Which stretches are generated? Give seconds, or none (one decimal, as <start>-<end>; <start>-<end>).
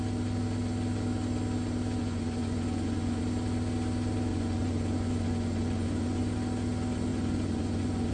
2.0-3.2; 4.3-6.2; 7.1-8.1